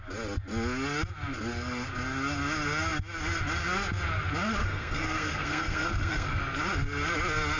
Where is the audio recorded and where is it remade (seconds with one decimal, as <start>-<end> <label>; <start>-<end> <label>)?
0.0-4.6 recorded; 4.6-6.4 remade; 6.4-7.6 recorded